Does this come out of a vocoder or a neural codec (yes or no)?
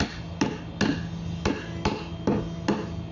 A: no